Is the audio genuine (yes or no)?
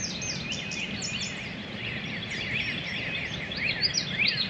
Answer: yes